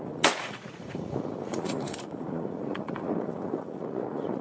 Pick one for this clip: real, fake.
fake